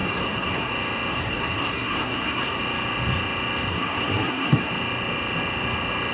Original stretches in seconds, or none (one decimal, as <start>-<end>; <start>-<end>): 0.7-1.1; 2.6-3.7; 4.7-6.1